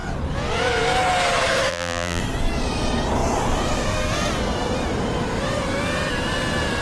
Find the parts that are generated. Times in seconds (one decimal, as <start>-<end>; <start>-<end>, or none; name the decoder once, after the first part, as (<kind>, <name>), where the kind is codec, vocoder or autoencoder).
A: 1.7-2.2 (vocoder, BigVGAN v2)